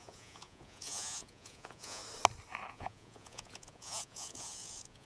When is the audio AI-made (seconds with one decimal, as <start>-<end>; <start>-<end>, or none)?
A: 0.0-2.0; 2.7-5.1